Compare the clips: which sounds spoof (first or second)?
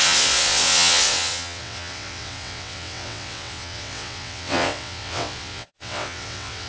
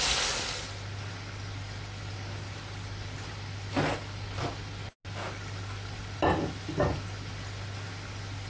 first